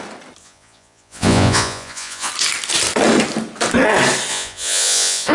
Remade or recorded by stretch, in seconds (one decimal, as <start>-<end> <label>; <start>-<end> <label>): 0.0-0.4 recorded; 0.4-2.3 remade; 2.3-4.3 recorded; 4.3-5.3 remade